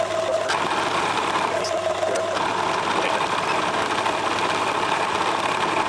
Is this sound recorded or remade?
remade